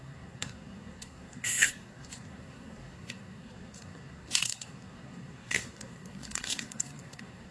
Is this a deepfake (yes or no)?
yes